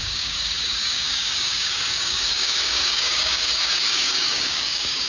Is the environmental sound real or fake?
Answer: fake